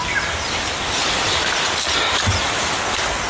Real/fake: real